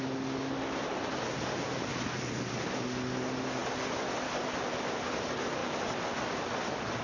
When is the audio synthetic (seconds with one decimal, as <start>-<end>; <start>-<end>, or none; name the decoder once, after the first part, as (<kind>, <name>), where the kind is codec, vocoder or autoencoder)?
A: none